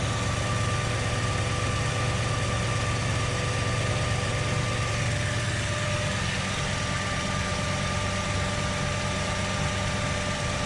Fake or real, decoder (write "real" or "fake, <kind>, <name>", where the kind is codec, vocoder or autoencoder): real